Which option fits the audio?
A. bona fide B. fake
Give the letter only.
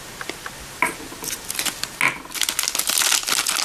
A